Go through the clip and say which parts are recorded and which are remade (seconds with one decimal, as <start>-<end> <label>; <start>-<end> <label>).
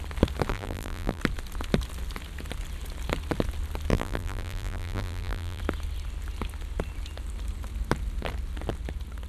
0.0-0.5 recorded; 0.5-1.2 remade; 1.2-3.9 recorded; 3.9-5.6 remade; 5.6-9.3 recorded